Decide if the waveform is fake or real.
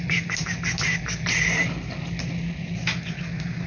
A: real